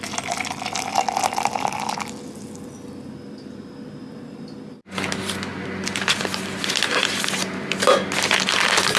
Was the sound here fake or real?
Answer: real